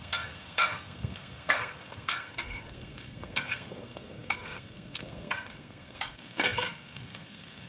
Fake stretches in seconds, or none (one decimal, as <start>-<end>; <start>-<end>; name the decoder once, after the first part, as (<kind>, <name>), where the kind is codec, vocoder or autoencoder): 0.0-7.7 (codec, SNAC)